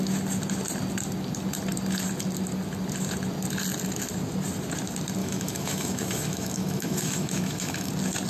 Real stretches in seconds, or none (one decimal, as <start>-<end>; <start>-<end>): 0.0-5.2; 7.9-8.3